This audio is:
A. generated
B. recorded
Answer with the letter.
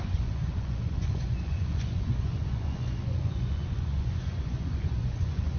A